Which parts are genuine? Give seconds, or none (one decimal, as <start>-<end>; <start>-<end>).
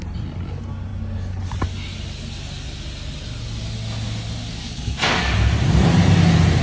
0.0-4.6; 5.3-6.6